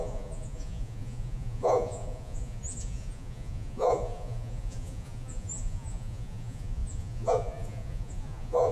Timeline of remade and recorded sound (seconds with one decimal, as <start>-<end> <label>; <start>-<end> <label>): 0.0-8.7 remade